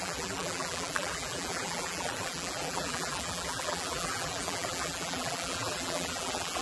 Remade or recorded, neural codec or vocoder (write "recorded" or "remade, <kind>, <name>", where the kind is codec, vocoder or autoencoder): remade, vocoder, BigVGAN v2